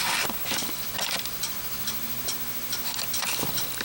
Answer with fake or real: real